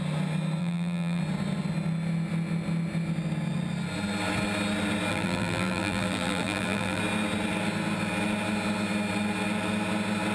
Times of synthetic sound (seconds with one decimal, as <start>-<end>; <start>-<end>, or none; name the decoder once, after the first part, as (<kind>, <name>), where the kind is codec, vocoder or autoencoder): 0.6-1.2 (vocoder, BigVGAN v2); 5.1-7.0